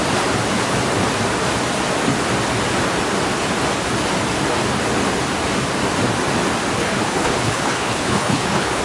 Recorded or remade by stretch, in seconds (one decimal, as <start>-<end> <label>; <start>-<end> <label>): 0.0-6.8 recorded; 6.8-8.8 remade